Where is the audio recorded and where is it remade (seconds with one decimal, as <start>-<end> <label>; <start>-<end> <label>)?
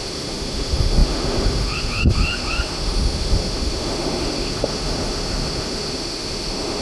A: 0.0-6.8 remade